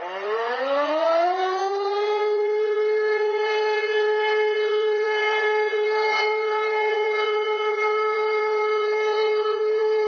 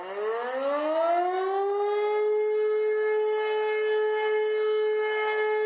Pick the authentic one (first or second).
second